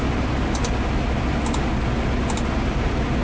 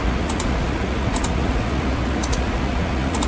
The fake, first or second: second